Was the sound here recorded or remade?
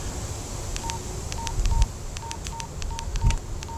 recorded